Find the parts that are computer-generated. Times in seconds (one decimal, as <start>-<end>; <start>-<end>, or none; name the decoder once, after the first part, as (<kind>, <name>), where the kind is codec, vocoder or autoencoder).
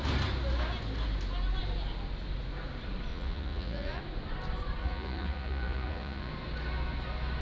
3.1-4.0 (vocoder, Vocos); 4.8-6.3